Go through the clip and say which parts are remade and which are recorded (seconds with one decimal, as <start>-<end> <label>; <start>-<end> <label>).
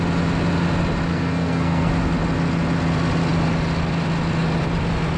0.0-1.1 recorded; 1.1-1.9 remade; 1.9-5.2 recorded